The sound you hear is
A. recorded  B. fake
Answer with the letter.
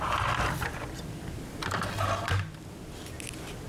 A